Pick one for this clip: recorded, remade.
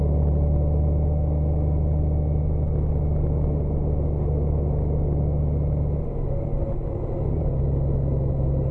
recorded